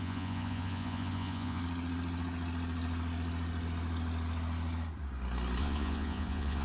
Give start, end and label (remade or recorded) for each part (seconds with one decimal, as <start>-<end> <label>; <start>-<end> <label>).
0.0-1.6 remade; 1.6-5.6 recorded; 5.6-6.6 remade